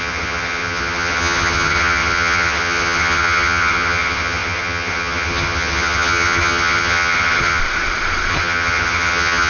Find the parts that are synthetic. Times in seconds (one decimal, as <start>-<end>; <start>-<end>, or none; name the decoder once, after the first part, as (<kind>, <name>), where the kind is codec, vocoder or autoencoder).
0.0-7.6 (vocoder, HiFi-GAN); 8.3-9.5